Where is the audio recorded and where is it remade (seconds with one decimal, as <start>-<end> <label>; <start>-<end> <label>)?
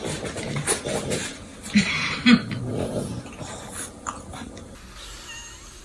0.0-3.1 remade; 3.1-5.8 recorded